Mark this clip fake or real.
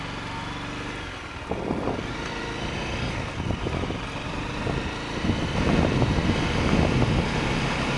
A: real